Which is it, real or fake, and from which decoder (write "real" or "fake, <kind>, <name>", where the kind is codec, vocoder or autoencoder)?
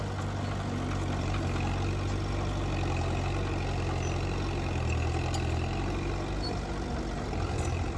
real